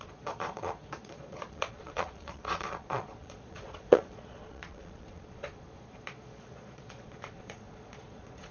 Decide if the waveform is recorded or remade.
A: remade